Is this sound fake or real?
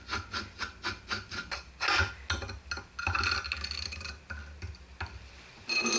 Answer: real